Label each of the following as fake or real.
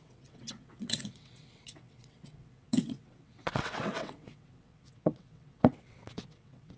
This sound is fake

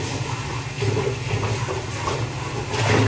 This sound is real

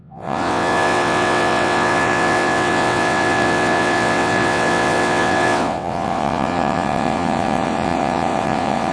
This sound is fake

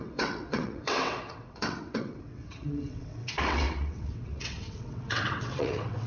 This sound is fake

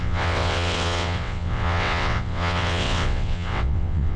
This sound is fake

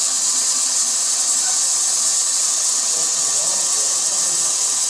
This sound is fake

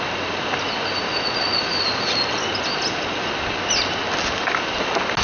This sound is real